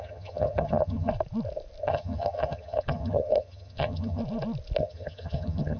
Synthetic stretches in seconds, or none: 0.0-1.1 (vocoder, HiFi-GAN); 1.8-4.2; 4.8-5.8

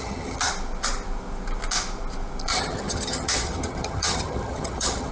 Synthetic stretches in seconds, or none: 0.0-0.5 (vocoder, HiFi-GAN); 2.5-5.1

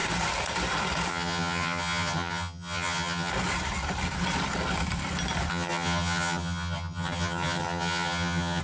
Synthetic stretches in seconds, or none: 1.1-3.3 (vocoder, HiFi-GAN); 5.5-8.6

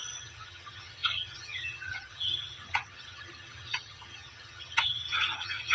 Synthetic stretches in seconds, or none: 0.0-5.7 (vocoder, HiFi-GAN)

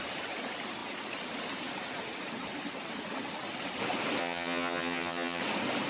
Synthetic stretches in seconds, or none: 4.2-5.4 (vocoder, HiFi-GAN)

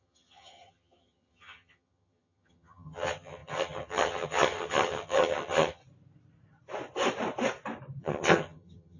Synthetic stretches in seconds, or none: 0.0-5.8 (vocoder, HiFi-GAN); 8.0-9.0